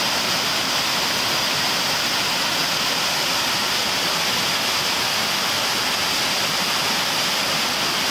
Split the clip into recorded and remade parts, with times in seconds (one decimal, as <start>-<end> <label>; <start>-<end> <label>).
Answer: 0.0-8.1 recorded